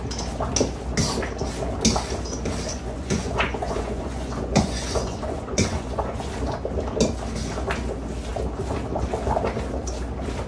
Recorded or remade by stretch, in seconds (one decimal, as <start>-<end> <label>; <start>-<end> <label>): 0.0-2.7 recorded; 2.7-6.3 remade; 6.3-10.5 recorded